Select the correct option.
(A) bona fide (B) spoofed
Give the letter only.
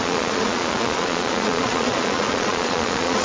B